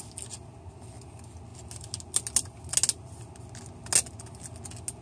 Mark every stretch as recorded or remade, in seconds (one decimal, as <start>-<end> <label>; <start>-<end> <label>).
0.0-5.0 recorded